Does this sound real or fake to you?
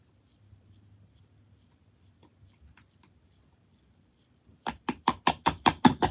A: real